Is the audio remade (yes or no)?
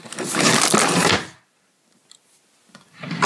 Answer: no